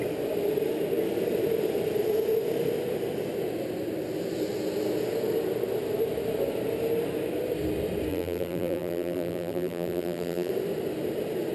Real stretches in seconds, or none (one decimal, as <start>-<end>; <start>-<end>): 0.0-8.1; 10.5-11.5